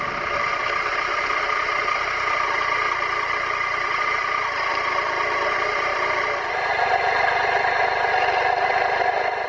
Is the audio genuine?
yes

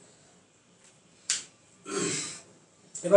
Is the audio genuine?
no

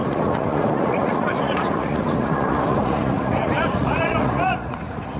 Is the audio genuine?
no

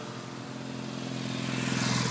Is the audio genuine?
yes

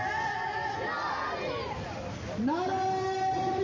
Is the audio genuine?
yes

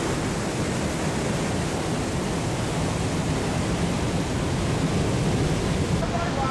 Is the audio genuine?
yes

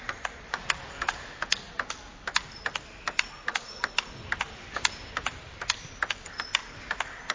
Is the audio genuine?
yes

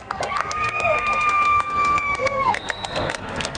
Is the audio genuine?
no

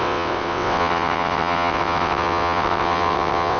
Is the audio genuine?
no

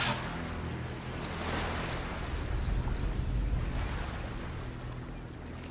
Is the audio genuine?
yes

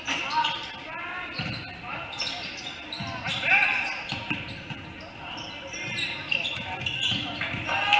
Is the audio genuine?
yes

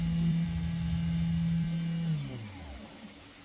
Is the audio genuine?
yes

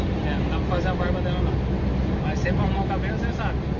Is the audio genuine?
yes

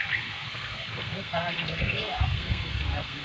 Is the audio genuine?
no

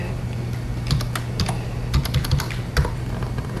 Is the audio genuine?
yes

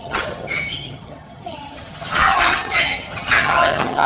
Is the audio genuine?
no